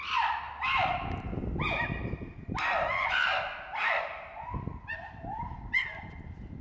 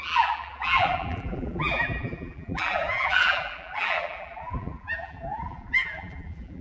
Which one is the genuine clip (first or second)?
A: first